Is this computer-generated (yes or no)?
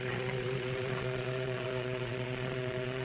yes